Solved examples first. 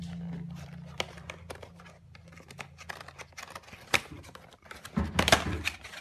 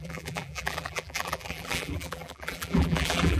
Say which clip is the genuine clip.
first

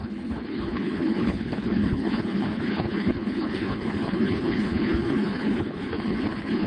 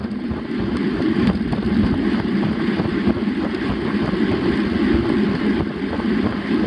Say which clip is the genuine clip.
second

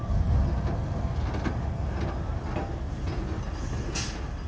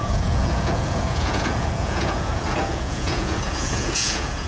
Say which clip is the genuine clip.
first